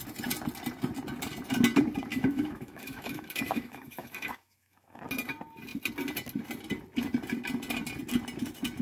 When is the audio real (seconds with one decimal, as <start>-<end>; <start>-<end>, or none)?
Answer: 0.0-2.1; 5.0-8.8

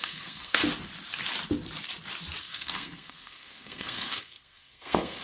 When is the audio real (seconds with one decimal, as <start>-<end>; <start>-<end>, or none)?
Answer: 0.6-2.4